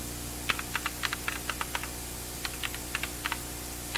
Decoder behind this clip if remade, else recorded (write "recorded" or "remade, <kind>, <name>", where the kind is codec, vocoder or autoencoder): recorded